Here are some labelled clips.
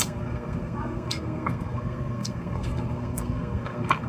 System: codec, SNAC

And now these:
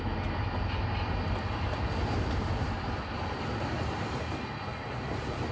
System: none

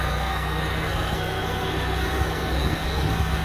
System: codec, SNAC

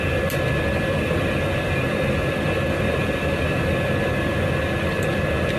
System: none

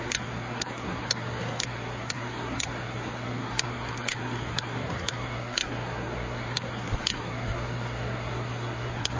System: codec, SNAC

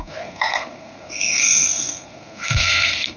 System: codec, SNAC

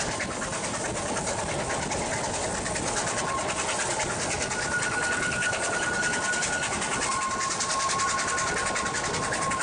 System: none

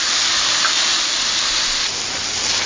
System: none